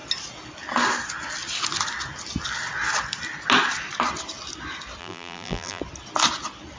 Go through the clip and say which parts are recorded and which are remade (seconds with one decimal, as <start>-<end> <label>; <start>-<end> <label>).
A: 0.0-5.0 recorded; 5.0-5.8 remade; 5.8-6.8 recorded